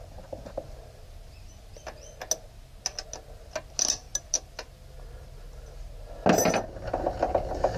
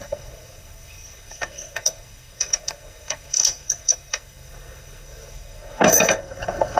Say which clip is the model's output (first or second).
second